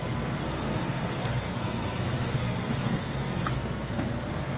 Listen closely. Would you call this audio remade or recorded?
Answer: remade